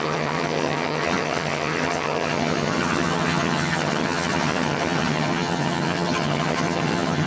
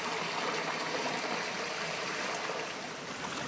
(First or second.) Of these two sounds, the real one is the second